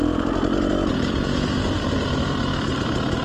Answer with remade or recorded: remade